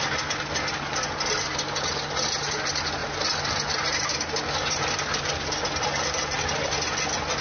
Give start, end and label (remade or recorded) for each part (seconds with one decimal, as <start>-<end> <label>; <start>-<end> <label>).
0.0-7.4 recorded